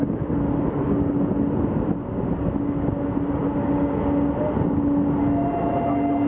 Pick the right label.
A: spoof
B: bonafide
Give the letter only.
B